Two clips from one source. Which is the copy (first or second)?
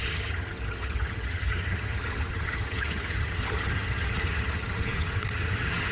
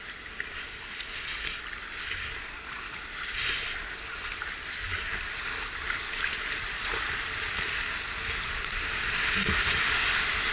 first